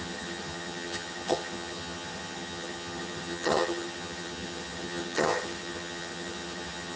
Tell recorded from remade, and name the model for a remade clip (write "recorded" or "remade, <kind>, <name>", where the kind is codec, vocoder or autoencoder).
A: remade, vocoder, HiFi-GAN